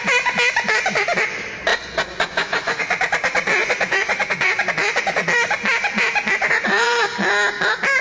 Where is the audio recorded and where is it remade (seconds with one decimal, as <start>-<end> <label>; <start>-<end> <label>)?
0.0-1.7 recorded; 1.7-2.8 remade; 2.8-3.6 recorded; 3.6-4.6 remade; 4.6-6.4 recorded; 6.4-7.0 remade; 7.0-8.0 recorded